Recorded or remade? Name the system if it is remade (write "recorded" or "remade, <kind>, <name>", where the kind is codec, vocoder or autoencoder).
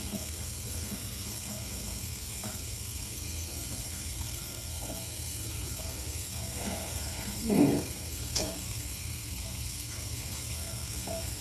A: remade, codec, SNAC